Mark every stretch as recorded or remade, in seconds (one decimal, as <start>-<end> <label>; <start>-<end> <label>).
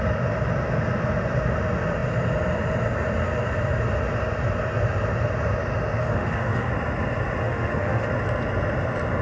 0.0-6.0 recorded; 6.0-6.7 remade; 6.7-7.4 recorded; 7.4-8.1 remade; 8.1-9.2 recorded